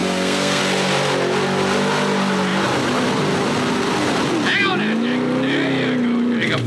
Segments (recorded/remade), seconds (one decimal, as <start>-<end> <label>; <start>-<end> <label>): 0.0-0.6 remade; 0.6-6.7 recorded